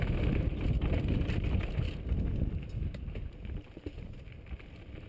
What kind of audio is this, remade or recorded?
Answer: recorded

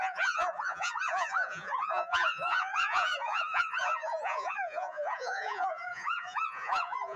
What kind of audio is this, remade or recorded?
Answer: remade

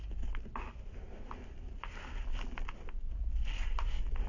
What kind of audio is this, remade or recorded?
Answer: recorded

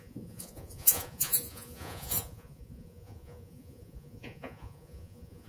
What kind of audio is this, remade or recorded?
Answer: remade